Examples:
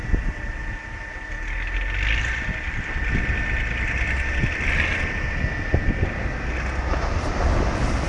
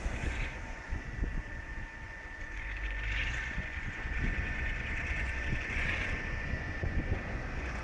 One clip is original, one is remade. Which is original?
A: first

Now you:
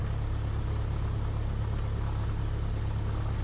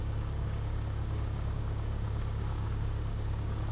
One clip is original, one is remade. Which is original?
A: first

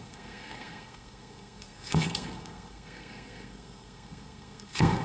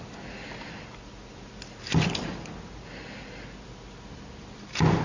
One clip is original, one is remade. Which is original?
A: second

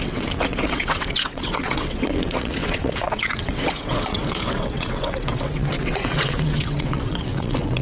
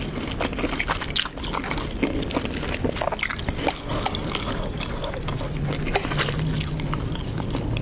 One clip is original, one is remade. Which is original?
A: second